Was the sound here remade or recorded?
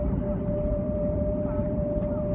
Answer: remade